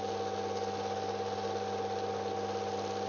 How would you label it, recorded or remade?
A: recorded